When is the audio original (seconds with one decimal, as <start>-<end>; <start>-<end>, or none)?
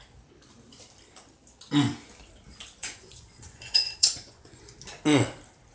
0.0-2.8; 4.6-5.7